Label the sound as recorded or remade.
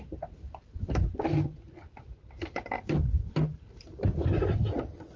recorded